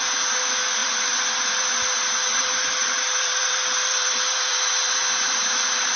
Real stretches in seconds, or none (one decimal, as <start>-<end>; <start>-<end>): 0.0-0.8; 1.7-2.3; 4.7-6.0